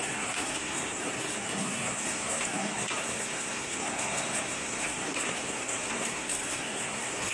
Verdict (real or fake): fake